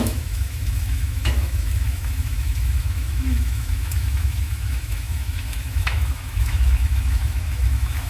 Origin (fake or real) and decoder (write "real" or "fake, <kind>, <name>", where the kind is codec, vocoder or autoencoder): fake, autoencoder, DAC-VAE